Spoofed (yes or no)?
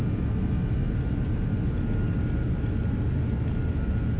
no